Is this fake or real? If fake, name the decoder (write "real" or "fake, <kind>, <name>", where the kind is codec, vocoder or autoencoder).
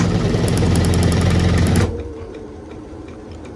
fake, vocoder, BigVGAN v2